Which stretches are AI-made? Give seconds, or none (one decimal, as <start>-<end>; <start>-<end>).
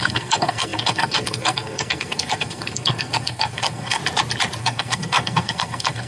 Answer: 0.0-4.0; 4.6-6.1